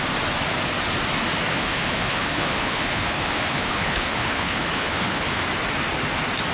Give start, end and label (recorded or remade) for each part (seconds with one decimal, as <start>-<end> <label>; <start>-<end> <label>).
0.0-1.5 recorded; 1.5-5.4 remade; 5.4-6.5 recorded